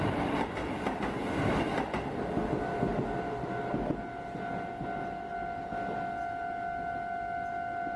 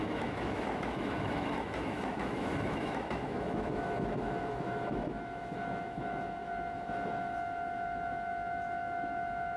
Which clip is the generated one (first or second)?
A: second